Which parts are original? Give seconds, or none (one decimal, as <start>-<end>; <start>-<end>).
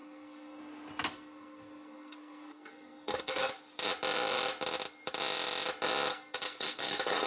0.6-1.1; 3.5-6.1